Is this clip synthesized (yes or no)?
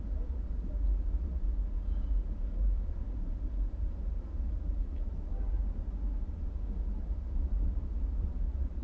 no